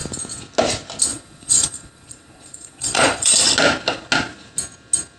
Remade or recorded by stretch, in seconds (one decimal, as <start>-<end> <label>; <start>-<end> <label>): 0.0-1.1 recorded; 1.1-3.3 remade; 3.3-5.2 recorded